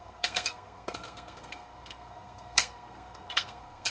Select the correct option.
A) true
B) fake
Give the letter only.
B